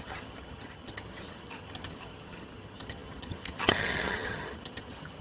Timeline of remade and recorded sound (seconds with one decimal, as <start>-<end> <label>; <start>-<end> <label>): 0.0-5.2 remade